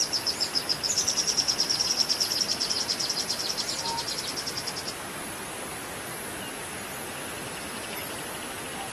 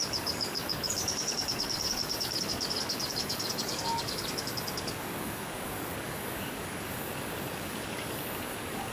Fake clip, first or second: second